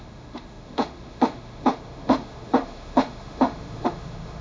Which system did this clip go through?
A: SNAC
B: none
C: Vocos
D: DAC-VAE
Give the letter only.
D